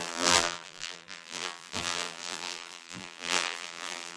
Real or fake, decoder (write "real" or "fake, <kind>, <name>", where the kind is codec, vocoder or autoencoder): fake, vocoder, BigVGAN v2